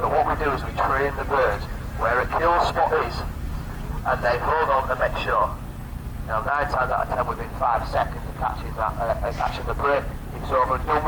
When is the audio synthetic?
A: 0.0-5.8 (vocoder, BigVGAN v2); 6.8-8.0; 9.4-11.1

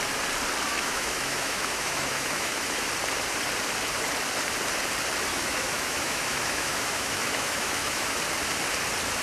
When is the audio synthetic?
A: 0.7-2.9 (autoencoder, DAC-VAE); 5.3-8.2

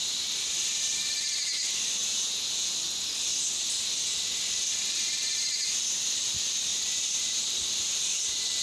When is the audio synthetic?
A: 2.0-2.7 (vocoder, Vocos)

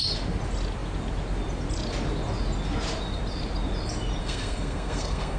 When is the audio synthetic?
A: 4.2-5.4 (codec, SNAC)